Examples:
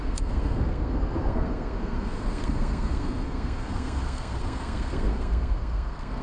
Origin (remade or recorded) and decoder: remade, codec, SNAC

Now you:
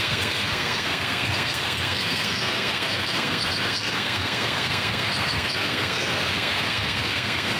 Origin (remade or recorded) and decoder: remade, codec, SNAC